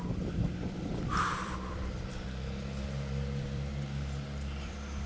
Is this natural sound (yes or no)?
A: no